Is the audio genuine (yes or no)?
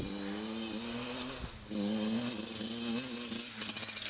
yes